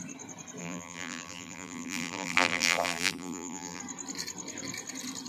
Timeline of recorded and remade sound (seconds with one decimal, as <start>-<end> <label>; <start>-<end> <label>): 0.0-0.6 recorded; 0.6-3.8 remade; 3.8-5.3 recorded